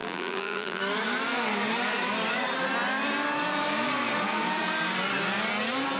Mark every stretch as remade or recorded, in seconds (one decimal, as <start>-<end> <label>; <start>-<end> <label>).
0.0-0.8 remade; 0.8-6.0 recorded